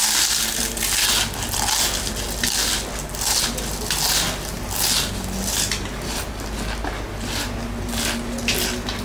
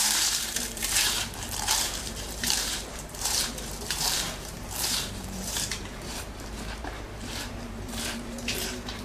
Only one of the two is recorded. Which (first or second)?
first